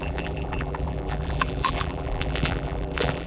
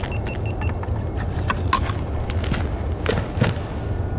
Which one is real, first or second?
second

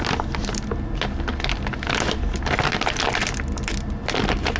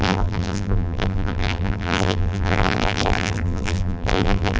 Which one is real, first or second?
first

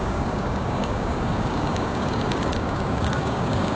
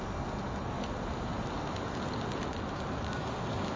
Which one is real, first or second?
second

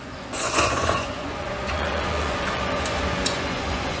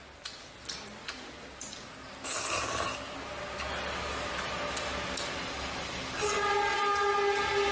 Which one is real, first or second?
second